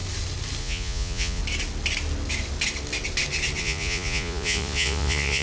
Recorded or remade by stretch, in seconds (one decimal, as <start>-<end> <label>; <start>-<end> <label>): 0.0-0.6 recorded; 0.6-1.4 remade; 1.4-3.6 recorded; 3.6-5.4 remade